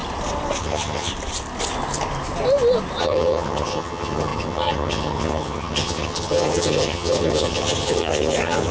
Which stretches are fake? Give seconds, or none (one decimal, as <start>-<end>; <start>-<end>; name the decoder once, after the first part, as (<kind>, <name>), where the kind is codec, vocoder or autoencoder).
0.6-1.1 (vocoder, HiFi-GAN); 3.0-8.7